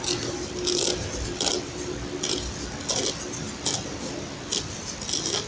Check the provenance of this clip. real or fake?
real